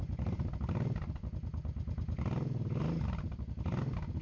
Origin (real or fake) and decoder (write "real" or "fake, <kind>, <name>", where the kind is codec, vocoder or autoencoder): real